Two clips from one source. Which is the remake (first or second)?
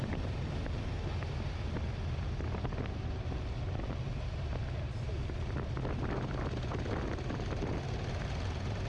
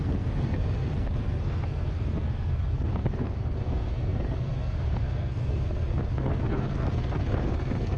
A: second